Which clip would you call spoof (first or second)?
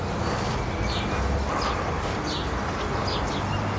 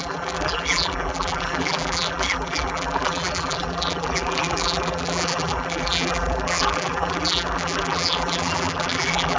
second